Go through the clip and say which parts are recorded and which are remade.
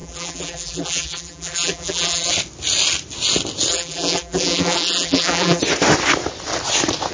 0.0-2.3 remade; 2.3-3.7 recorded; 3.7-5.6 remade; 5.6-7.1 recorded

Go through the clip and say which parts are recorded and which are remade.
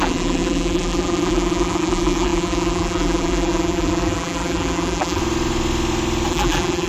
0.0-5.2 remade; 5.2-6.3 recorded; 6.3-6.9 remade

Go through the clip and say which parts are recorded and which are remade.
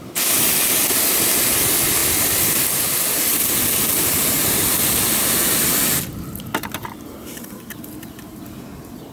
0.0-7.2 recorded; 7.2-8.4 remade; 8.4-9.1 recorded